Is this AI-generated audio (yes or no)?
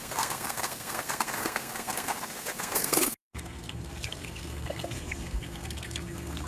yes